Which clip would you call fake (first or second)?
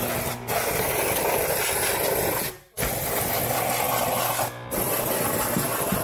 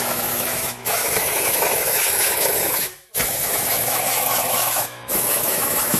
second